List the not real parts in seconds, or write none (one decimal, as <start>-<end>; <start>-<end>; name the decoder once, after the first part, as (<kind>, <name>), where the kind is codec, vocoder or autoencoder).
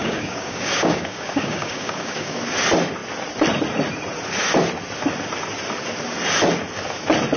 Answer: 0.0-2.4 (codec, DAC)